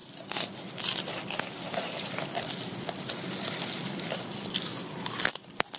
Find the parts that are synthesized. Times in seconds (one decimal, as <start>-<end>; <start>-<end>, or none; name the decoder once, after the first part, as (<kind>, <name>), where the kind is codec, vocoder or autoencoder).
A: none